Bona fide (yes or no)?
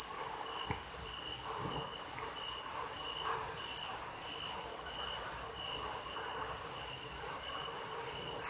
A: yes